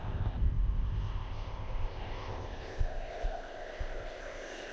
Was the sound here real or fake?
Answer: fake